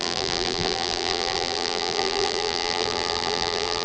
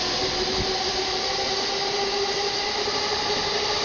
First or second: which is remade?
first